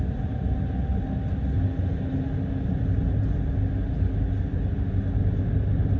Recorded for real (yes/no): yes